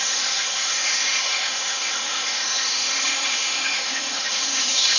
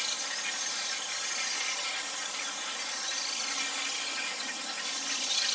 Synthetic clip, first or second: first